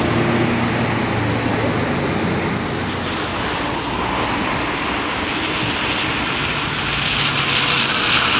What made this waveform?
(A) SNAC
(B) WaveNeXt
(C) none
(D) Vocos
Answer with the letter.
C